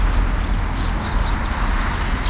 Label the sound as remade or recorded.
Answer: recorded